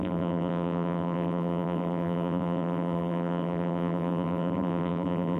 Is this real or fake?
fake